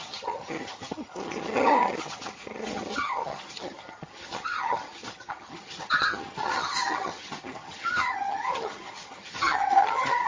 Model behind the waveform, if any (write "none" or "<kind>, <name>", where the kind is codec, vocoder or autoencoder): vocoder, HiFi-GAN